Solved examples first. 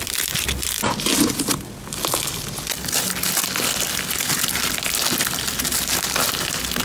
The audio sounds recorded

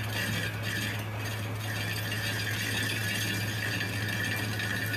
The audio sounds recorded